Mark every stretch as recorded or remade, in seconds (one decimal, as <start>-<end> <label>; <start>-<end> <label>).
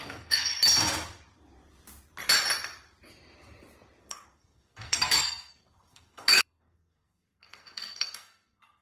0.0-0.5 remade; 0.5-4.0 recorded; 4.0-8.8 remade